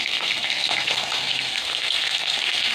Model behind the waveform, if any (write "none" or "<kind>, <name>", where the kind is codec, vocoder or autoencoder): codec, SNAC